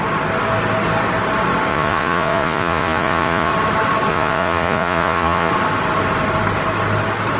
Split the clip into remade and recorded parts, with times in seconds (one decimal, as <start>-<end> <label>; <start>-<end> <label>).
0.0-1.7 recorded; 1.7-3.5 remade; 3.5-4.1 recorded; 4.1-5.5 remade; 5.5-7.4 recorded